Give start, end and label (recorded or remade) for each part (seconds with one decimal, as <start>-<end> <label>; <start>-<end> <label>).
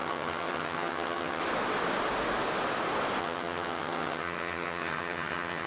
0.0-1.4 remade; 1.4-3.2 recorded; 3.2-5.7 remade